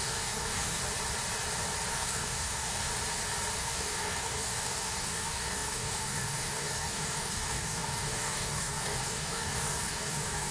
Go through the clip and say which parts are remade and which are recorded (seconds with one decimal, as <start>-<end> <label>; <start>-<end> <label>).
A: 0.0-0.8 remade; 0.8-1.9 recorded; 1.9-2.9 remade; 2.9-3.6 recorded; 3.6-10.5 remade